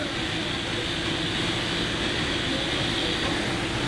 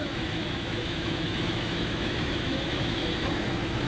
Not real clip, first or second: second